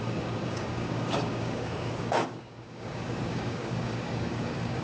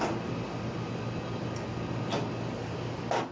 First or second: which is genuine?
second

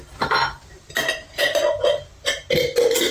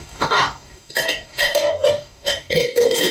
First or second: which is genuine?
first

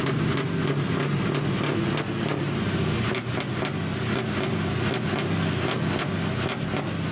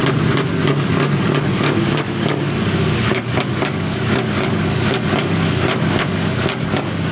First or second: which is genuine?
first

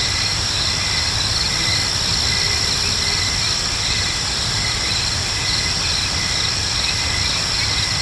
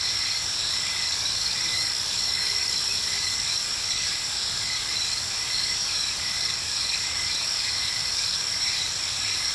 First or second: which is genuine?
first